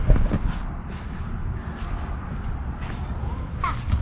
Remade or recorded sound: recorded